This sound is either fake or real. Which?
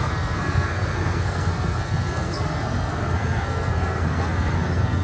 fake